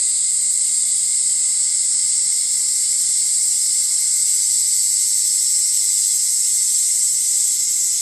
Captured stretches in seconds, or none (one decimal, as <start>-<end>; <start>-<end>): 4.2-8.0